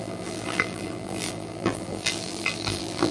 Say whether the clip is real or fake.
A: fake